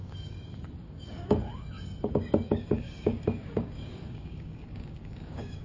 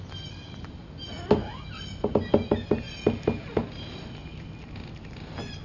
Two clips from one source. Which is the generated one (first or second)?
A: first